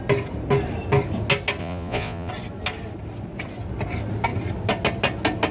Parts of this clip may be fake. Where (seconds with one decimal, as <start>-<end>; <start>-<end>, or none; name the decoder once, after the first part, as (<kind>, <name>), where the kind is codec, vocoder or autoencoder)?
1.6-2.3 (vocoder, Vocos)